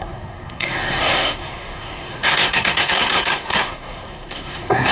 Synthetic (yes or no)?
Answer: yes